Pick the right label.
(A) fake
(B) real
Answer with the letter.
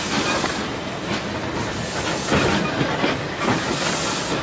B